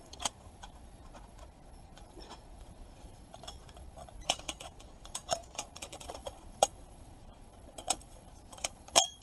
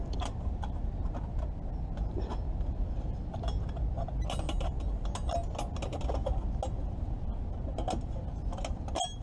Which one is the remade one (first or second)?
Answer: first